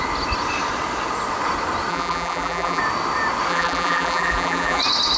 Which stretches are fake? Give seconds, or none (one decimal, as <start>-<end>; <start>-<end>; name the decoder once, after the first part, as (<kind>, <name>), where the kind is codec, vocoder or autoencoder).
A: 1.9-2.8 (vocoder, BigVGAN v2); 3.5-4.8